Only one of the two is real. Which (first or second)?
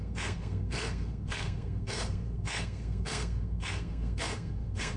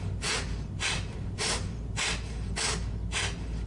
second